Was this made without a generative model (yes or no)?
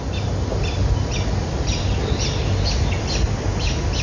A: yes